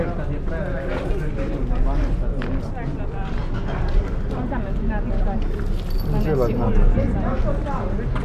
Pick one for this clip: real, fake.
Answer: real